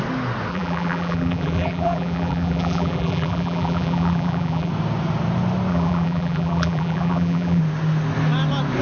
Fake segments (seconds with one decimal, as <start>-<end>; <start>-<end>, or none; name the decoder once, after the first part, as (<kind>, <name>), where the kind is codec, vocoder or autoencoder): 0.5-4.7 (vocoder, BigVGAN v2); 5.7-7.6

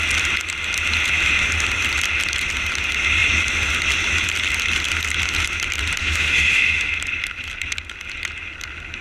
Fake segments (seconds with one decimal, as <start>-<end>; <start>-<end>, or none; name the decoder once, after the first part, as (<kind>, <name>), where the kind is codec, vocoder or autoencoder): 6.0-6.9 (autoencoder, DAC-VAE)

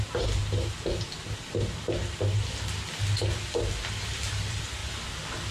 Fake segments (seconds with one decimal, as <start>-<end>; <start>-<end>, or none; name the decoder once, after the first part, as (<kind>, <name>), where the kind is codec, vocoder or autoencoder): 0.0-4.8 (vocoder, BigVGAN v2)

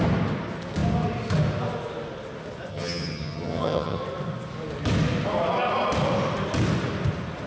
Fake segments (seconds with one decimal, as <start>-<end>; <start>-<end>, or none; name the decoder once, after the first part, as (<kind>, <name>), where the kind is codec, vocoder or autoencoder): 2.7-4.0 (vocoder, HiFi-GAN)

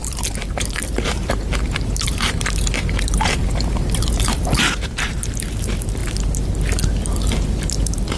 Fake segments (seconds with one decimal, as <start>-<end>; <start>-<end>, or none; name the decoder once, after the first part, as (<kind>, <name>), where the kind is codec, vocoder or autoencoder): 0.0-6.0 (vocoder, BigVGAN v2); 7.3-8.2

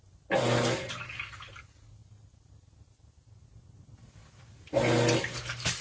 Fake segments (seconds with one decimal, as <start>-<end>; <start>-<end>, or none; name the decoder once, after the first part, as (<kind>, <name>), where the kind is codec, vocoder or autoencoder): none

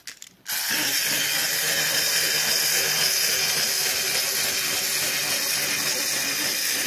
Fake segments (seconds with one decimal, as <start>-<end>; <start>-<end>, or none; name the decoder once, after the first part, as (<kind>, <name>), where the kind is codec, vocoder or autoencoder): none

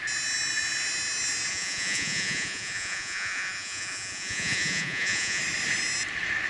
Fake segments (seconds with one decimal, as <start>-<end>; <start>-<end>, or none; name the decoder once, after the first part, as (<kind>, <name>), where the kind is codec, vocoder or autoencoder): 1.5-5.4 (vocoder, Vocos)